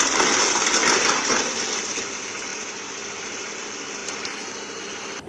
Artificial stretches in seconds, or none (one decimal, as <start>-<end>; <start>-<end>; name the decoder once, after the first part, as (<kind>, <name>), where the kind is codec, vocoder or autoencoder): 0.8-2.0 (vocoder, BigVGAN v2); 2.5-3.5